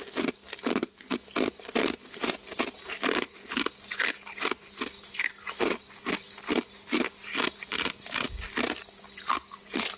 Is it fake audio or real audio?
real